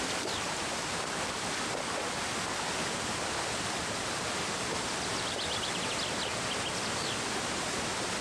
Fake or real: real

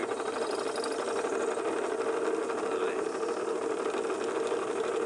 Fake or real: real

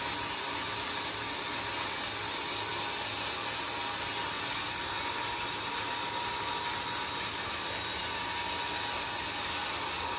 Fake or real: real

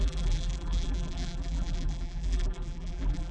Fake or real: fake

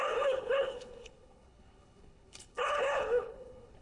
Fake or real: fake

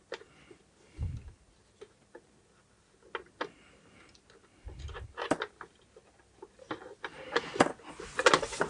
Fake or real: real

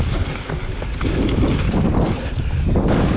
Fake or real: real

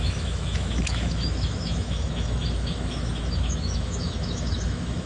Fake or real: fake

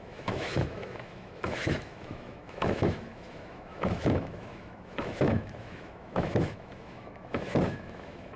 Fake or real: fake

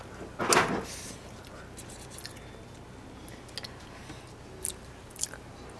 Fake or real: real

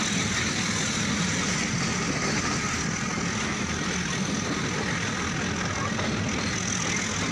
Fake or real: real